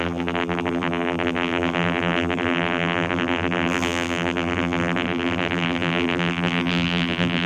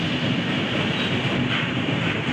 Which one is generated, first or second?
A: first